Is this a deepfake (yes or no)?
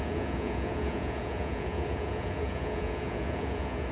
yes